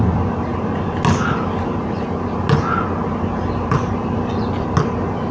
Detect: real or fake real